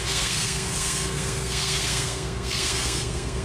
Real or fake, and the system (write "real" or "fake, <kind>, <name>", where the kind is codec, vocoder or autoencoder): fake, codec, SNAC